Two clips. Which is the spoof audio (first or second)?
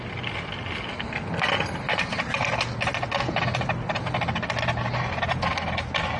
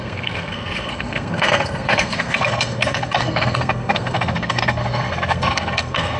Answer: second